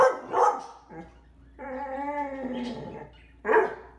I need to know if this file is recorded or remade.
recorded